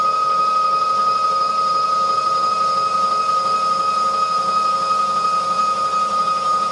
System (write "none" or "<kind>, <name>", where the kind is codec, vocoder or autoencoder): none